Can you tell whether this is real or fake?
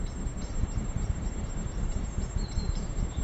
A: fake